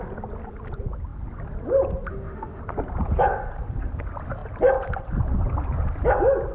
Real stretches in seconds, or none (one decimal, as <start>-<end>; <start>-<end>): 0.0-2.1; 2.6-6.5